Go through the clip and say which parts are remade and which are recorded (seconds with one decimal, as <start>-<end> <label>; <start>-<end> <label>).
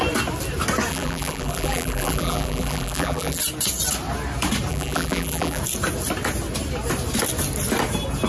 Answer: 0.0-0.9 recorded; 0.9-3.4 remade; 3.4-4.7 recorded; 4.7-5.6 remade; 5.6-8.3 recorded